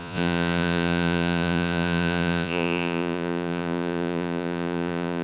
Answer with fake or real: fake